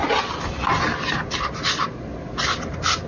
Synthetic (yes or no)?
no